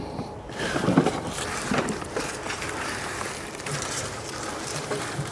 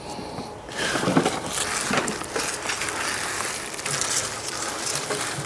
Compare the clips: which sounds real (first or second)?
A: second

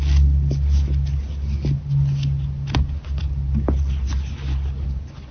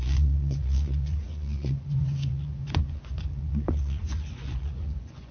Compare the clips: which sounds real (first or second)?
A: first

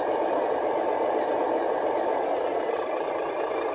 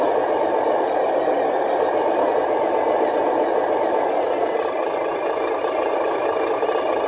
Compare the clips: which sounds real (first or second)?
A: second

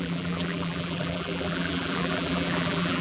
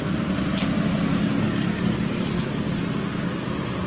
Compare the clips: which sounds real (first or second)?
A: second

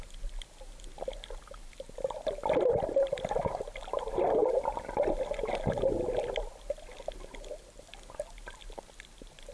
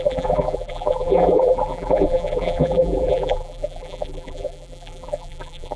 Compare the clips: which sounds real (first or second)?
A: first